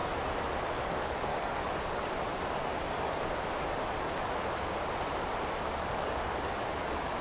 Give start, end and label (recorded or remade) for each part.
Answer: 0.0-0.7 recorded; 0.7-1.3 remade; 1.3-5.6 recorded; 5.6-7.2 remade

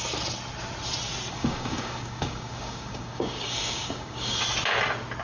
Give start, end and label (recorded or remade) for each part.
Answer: 0.0-1.3 recorded; 1.3-4.4 remade; 4.4-5.2 recorded

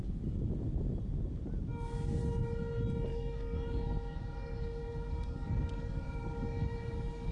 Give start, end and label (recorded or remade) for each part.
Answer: 0.0-1.7 recorded; 1.7-2.2 remade; 2.2-3.1 recorded; 3.1-7.3 remade

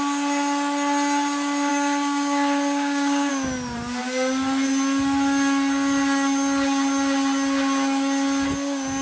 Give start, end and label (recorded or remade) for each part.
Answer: 0.0-1.7 recorded; 1.7-3.3 remade; 3.3-9.0 recorded

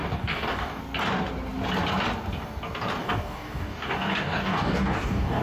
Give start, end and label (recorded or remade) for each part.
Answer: 0.0-0.8 remade; 0.8-3.0 recorded; 3.0-5.4 remade